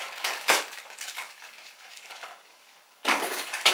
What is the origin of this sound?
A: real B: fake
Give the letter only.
B